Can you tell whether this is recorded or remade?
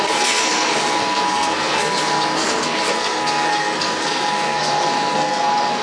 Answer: remade